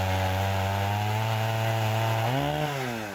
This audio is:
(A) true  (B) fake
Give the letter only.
A